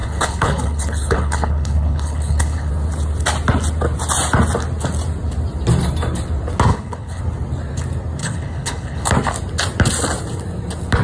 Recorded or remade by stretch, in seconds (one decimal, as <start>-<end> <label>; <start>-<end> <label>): 0.0-2.7 remade; 2.7-6.7 recorded; 6.7-7.2 remade; 7.2-8.2 recorded; 8.2-9.1 remade; 9.1-11.0 recorded